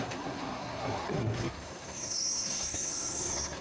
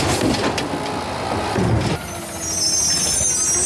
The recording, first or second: second